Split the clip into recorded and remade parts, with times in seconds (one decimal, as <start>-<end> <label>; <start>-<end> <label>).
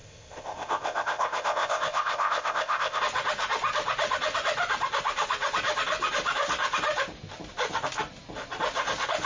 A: 0.0-3.0 remade; 3.0-9.3 recorded